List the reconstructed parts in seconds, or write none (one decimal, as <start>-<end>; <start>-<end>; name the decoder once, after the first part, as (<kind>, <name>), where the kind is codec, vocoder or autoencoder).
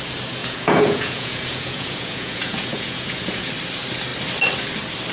0.4-3.5 (vocoder, Vocos)